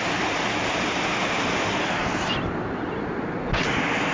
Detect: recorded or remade recorded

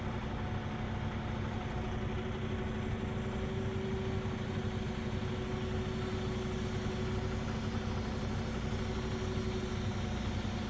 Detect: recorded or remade recorded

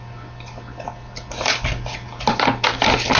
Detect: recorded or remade recorded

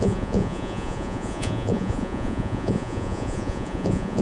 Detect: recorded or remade remade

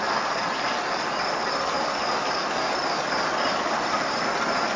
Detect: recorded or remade recorded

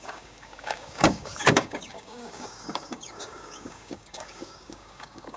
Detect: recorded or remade remade